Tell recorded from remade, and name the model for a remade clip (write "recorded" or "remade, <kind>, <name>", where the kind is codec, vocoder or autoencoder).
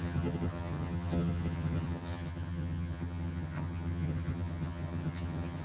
remade, vocoder, HiFi-GAN